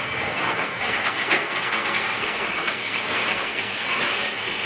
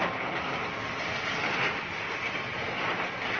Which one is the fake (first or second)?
first